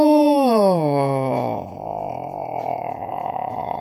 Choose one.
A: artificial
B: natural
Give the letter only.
A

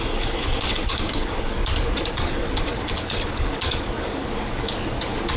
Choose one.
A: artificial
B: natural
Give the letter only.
A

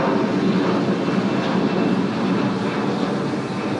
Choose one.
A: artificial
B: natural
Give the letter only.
B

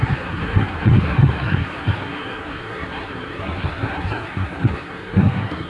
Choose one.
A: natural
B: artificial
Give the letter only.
B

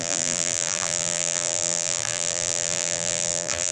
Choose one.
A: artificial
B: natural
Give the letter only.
A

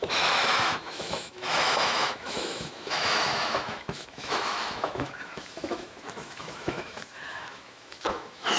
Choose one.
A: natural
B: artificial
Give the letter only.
B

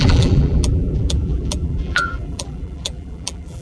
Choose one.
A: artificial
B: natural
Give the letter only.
A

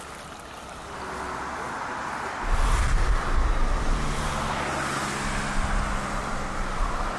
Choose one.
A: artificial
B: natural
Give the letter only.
B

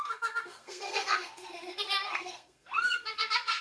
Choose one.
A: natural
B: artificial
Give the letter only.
B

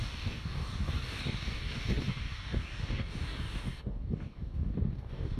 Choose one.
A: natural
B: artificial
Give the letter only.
B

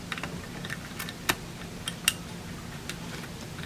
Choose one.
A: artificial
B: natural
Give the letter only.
B